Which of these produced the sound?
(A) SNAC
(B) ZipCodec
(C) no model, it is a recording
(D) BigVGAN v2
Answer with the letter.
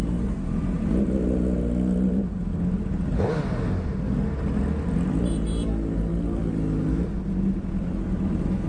C